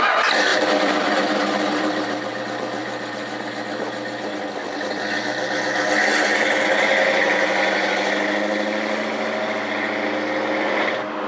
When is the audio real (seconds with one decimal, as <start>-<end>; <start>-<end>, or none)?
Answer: 0.0-0.5; 2.4-2.8; 3.5-11.3